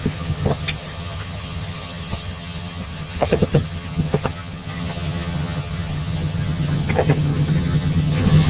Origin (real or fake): fake